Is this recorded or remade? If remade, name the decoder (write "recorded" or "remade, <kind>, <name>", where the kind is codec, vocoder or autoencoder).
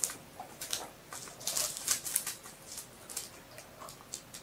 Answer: recorded